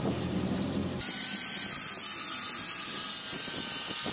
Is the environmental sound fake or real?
real